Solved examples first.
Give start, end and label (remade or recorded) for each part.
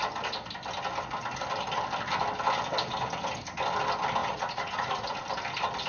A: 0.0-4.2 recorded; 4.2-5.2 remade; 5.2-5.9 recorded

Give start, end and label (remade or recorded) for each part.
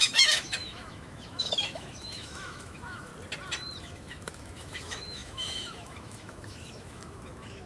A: 0.0-3.1 remade; 3.1-3.8 recorded; 3.8-7.7 remade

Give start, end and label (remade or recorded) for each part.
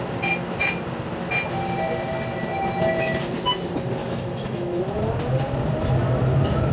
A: 0.0-4.0 recorded; 4.0-4.8 remade; 4.8-6.7 recorded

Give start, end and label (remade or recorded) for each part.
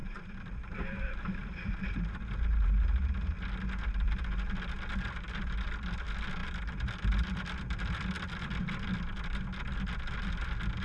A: 0.0-1.7 remade; 1.7-10.8 recorded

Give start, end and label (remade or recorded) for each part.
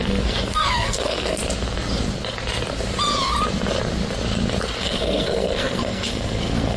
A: 0.0-1.4 remade; 1.4-4.8 recorded; 4.8-6.8 remade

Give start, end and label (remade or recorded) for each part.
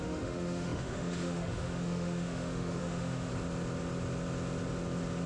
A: 0.0-3.3 remade; 3.3-5.3 recorded